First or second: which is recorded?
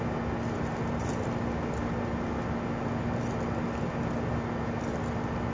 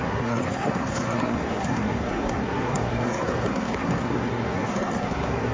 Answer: first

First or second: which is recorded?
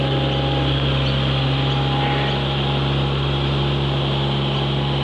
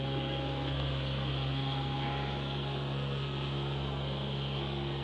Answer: first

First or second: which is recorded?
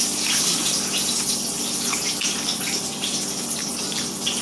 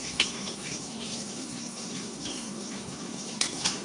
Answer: first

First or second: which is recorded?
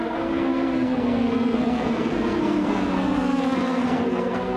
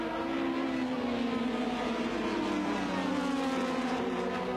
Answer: second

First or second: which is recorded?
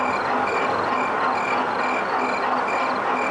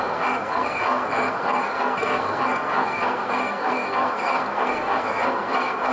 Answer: first